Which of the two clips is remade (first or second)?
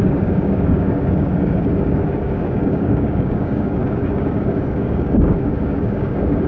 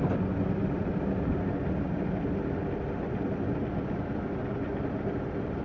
first